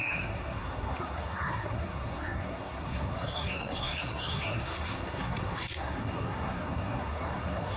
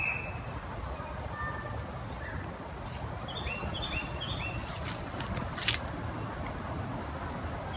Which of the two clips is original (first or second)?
second